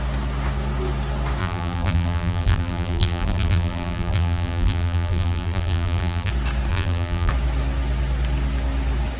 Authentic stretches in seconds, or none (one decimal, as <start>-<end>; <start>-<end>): 0.0-1.4; 6.3-6.7; 7.3-9.2